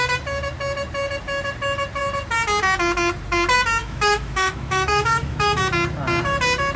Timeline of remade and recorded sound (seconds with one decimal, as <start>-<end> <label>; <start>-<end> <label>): 0.0-3.8 recorded; 3.8-5.6 remade; 5.6-6.8 recorded